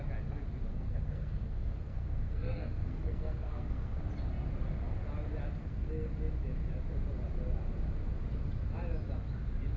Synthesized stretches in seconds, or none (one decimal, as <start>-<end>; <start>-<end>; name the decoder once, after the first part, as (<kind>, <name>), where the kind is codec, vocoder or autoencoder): 0.7-4.0 (codec, SNAC); 5.6-6.1